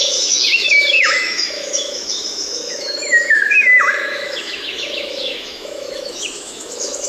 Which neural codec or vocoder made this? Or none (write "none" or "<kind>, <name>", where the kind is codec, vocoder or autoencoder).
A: autoencoder, DAC-VAE